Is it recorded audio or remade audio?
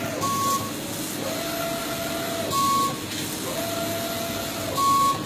recorded